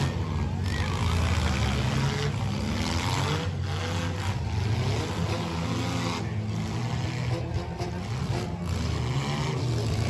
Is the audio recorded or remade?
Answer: recorded